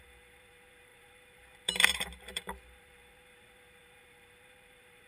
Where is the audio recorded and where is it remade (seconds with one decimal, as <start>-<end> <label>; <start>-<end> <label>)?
0.0-5.1 remade